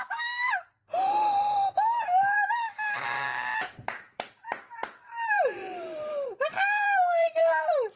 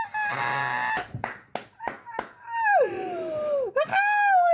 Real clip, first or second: second